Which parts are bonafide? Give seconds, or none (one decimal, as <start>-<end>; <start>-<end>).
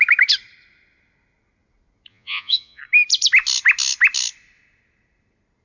0.0-2.1; 2.8-5.6